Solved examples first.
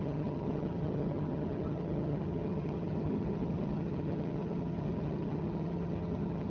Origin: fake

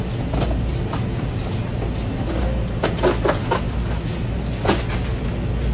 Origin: real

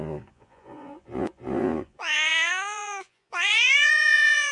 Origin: fake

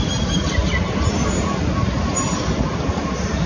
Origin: real